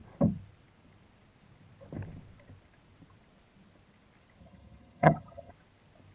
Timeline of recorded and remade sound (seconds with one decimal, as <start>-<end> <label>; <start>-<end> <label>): 0.0-4.4 recorded; 4.4-5.5 remade; 5.5-6.1 recorded